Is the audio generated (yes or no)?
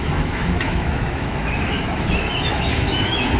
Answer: yes